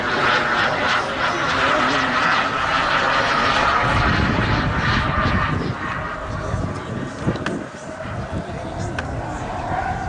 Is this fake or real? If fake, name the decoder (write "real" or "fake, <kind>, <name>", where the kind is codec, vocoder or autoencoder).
real